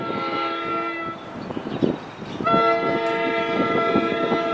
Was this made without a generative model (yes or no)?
yes